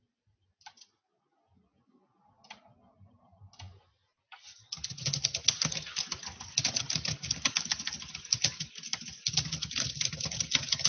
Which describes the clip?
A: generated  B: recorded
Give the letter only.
B